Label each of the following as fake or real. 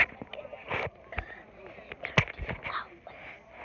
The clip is real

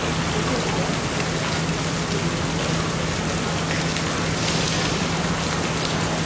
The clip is real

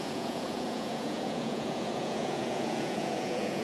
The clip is fake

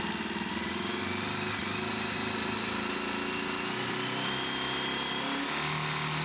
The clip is real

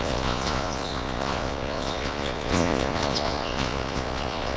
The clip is fake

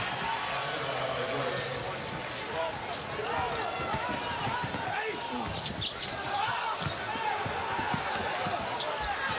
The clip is real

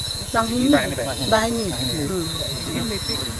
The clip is fake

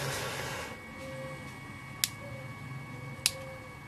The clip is real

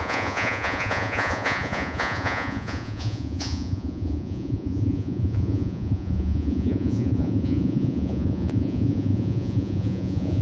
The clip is fake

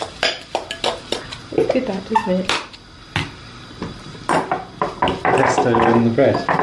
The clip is real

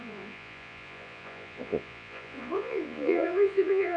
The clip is fake